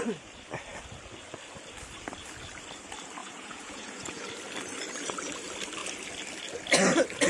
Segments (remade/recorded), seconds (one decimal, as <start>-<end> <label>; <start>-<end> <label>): 0.0-3.2 recorded; 3.2-4.2 remade; 4.2-7.3 recorded